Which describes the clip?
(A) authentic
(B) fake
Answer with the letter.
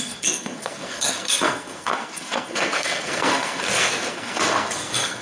B